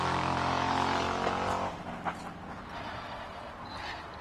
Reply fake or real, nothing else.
real